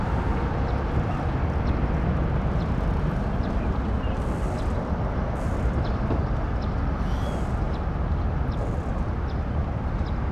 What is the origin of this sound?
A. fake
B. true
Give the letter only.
B